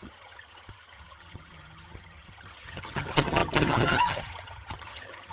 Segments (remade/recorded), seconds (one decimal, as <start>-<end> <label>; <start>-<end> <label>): 0.0-5.3 remade